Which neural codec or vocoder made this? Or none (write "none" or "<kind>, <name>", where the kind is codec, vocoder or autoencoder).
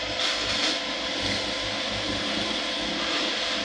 none